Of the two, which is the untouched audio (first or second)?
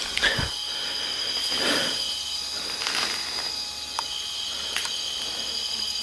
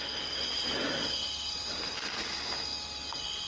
second